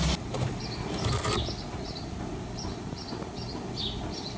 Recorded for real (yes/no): yes